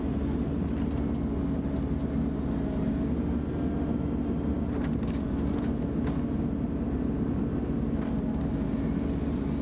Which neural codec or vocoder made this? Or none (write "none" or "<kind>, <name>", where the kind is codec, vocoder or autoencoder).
none